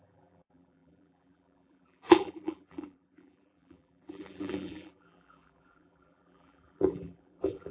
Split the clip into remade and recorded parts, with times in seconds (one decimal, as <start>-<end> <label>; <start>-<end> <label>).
0.0-7.7 remade